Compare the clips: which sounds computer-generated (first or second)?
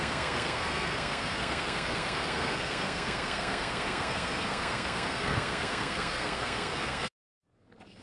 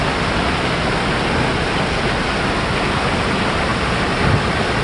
first